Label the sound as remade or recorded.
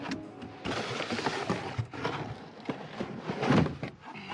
recorded